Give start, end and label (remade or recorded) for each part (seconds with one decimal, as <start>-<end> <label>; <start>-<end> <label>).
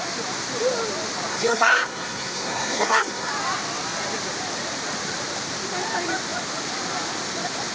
0.0-1.3 recorded; 1.3-3.3 remade; 3.3-7.7 recorded